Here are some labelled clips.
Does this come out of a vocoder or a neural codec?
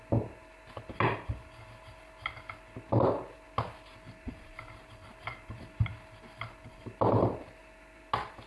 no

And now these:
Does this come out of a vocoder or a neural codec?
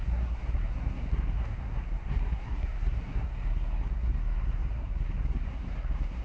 yes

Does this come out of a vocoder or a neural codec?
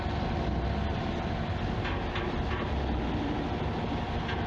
no